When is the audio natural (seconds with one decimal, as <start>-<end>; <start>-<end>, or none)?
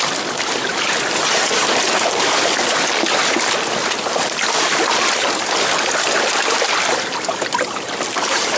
0.0-0.7; 1.2-8.6